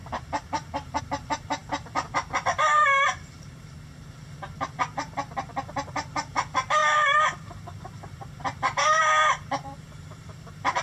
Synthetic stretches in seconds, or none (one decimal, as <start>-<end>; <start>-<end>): 0.0-10.8

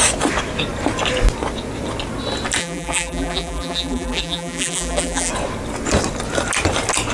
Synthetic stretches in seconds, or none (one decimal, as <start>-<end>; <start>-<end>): 2.6-5.3

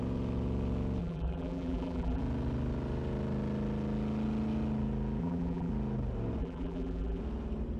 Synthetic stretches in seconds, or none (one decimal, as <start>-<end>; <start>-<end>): 1.0-2.2; 5.2-5.7; 6.4-7.2

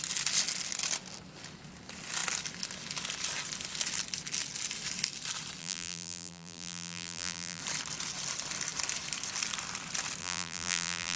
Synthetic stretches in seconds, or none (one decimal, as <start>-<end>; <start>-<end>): 5.6-7.6; 10.2-11.2